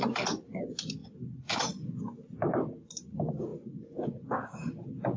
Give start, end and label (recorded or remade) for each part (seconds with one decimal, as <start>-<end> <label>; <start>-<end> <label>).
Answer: 0.0-5.2 recorded